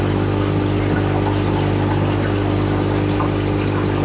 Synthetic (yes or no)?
no